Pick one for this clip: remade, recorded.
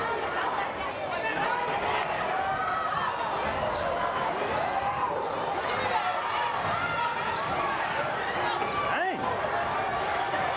recorded